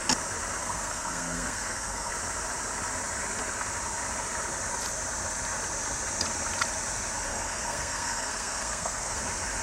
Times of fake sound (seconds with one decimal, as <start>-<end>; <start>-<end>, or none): 0.6-2.1; 7.3-9.2